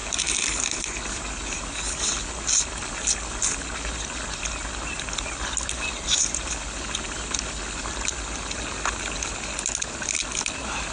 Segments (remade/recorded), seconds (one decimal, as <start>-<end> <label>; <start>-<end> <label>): 0.0-10.9 recorded